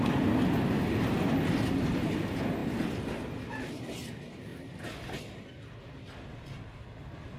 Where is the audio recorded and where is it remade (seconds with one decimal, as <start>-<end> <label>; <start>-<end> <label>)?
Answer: 0.0-7.4 recorded